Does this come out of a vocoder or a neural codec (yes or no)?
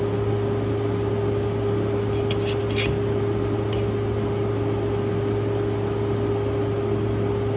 no